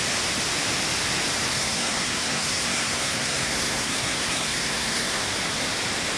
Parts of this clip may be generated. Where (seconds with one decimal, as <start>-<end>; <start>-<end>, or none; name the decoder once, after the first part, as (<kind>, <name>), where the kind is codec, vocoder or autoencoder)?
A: 1.5-5.2 (codec, SNAC)